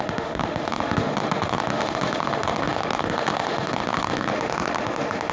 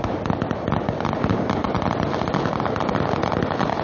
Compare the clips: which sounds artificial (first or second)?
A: first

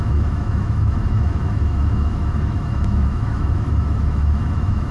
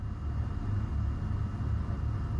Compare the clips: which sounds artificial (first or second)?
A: first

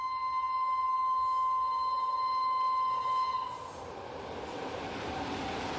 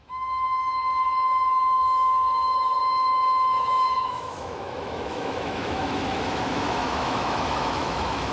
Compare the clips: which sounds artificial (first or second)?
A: second